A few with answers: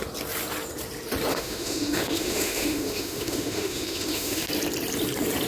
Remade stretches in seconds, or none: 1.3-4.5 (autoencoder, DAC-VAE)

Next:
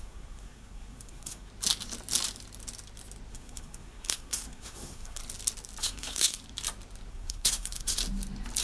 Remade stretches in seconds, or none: 0.0-1.5 (codec, SNAC); 3.3-5.2; 5.8-6.4; 7.1-8.0

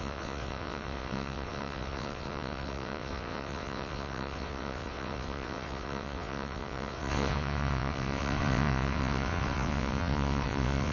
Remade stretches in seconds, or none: 0.0-10.9 (vocoder, WaveNeXt)